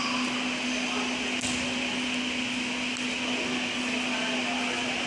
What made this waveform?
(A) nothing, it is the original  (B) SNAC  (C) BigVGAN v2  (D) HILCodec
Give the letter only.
A